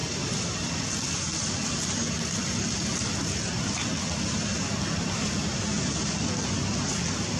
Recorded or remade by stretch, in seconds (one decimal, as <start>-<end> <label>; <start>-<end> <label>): 0.0-7.4 recorded